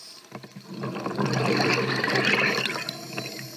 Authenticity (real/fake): real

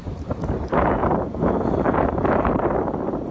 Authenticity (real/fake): fake